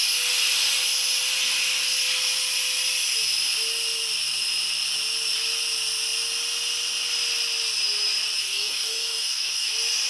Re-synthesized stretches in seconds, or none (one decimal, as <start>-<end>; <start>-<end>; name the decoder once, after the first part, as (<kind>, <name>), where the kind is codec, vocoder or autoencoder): 8.4-9.7 (codec, DAC)